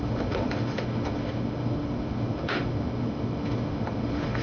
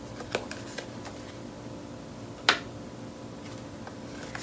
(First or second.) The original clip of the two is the second